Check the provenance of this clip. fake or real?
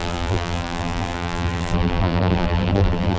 fake